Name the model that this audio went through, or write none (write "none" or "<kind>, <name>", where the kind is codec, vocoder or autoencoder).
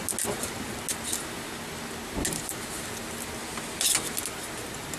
none